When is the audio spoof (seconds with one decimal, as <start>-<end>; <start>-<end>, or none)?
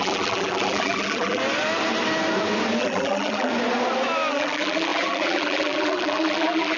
0.0-1.4; 2.8-3.5; 4.3-6.8